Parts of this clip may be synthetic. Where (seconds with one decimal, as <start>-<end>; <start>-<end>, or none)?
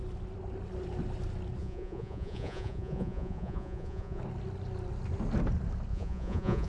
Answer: 1.6-4.2; 5.9-6.7